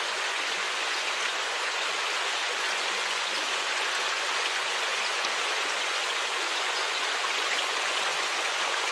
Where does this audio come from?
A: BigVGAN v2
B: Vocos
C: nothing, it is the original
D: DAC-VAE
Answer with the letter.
B